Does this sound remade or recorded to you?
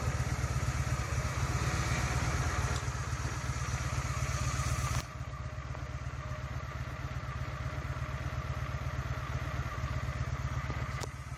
recorded